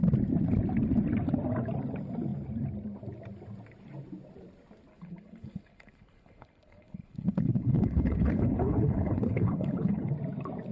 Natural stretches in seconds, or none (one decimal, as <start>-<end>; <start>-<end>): 0.0-4.9; 10.1-10.7